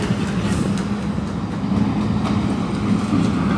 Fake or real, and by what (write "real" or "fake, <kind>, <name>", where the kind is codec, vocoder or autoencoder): real